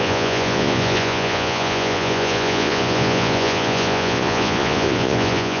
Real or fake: fake